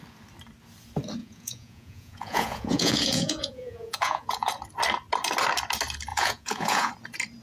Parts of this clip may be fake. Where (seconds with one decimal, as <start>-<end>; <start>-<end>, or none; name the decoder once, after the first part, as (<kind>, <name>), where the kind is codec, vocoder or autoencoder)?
1.2-4.5 (vocoder, Vocos); 6.1-6.9